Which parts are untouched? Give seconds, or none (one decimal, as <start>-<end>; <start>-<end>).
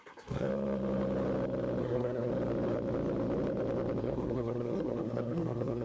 0.5-1.8; 2.3-4.0